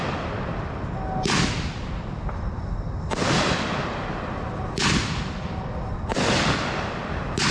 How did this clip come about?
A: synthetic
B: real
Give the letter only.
B